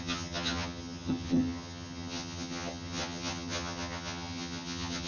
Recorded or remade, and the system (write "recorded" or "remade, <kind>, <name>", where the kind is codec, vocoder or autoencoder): remade, vocoder, HiFi-GAN